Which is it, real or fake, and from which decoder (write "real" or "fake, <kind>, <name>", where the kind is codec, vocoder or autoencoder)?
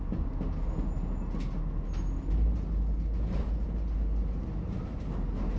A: real